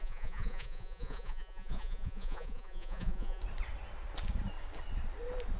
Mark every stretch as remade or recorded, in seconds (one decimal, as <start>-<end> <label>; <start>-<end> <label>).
0.0-3.4 remade; 3.4-5.6 recorded

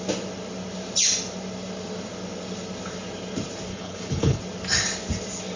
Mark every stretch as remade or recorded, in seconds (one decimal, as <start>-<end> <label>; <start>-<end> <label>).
0.0-3.7 recorded; 3.7-4.4 remade; 4.4-5.6 recorded

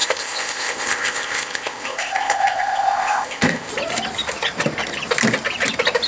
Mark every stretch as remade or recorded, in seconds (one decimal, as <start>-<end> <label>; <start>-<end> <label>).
0.0-3.7 remade; 3.7-6.1 recorded

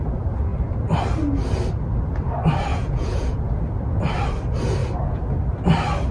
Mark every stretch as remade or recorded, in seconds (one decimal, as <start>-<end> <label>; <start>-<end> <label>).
0.0-2.7 recorded; 2.7-3.6 remade; 3.6-6.1 recorded